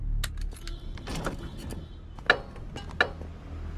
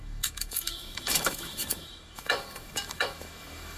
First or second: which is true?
first